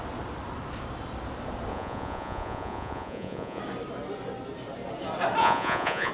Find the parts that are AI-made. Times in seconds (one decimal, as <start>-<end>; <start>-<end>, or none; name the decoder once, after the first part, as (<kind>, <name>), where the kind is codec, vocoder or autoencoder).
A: 1.7-3.6 (vocoder, Vocos); 5.4-6.1